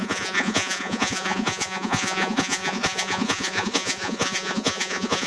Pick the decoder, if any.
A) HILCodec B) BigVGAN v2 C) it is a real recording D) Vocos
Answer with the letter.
D